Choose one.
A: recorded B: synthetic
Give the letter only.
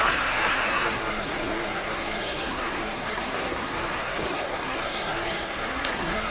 B